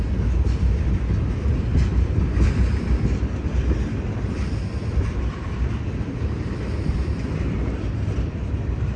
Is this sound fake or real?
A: fake